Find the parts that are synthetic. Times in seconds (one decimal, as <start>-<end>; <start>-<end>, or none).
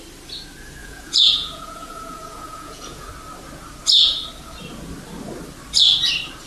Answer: 0.8-3.1